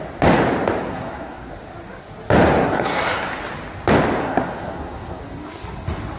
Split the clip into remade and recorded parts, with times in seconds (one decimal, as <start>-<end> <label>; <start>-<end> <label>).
0.0-0.9 recorded; 0.9-1.5 remade; 1.5-2.6 recorded; 2.6-3.4 remade; 3.4-4.2 recorded; 4.2-5.2 remade; 5.2-6.2 recorded